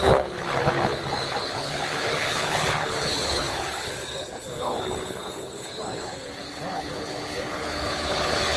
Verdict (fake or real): fake